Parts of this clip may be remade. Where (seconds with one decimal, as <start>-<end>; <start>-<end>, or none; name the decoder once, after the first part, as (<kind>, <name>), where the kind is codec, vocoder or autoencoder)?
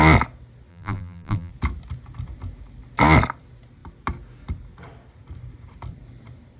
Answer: 0.7-1.5 (vocoder, BigVGAN v2)